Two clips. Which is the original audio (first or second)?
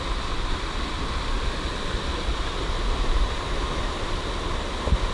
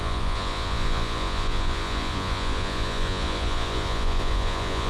first